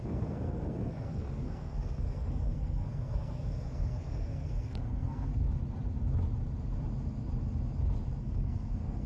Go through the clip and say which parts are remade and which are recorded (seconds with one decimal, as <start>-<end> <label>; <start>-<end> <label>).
0.0-5.3 remade; 5.3-8.2 recorded; 8.2-9.1 remade